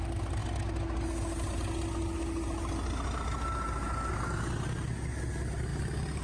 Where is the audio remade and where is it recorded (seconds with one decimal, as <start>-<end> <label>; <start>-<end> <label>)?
0.0-6.2 recorded